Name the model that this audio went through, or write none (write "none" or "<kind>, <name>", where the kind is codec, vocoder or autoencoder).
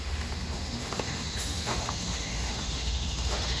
autoencoder, DAC-VAE